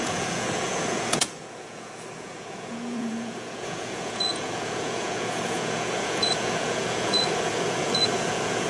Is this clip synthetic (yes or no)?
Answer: yes